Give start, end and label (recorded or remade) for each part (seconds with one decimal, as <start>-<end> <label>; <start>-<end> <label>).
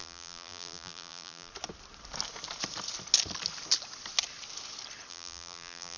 0.0-1.5 remade; 1.5-5.1 recorded; 5.1-6.0 remade